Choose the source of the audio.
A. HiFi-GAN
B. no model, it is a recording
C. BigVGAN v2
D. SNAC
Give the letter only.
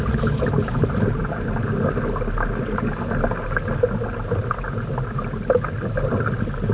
B